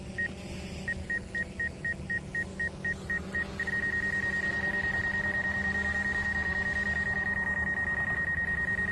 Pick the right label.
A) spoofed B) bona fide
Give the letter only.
B